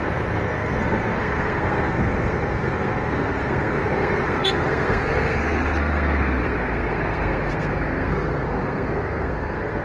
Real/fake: fake